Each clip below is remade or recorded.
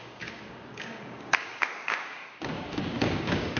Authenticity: remade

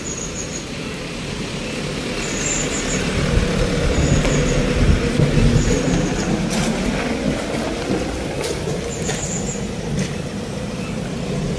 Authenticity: recorded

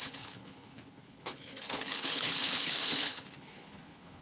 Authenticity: remade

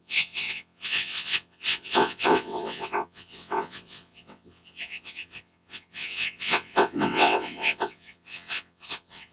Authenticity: remade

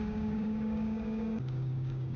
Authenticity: remade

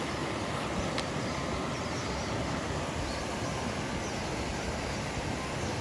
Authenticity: recorded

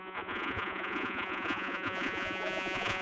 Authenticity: remade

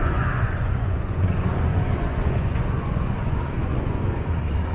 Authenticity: remade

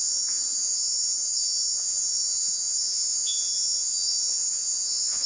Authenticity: remade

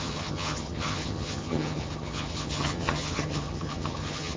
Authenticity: remade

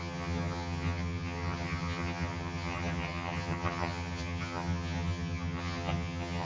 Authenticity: remade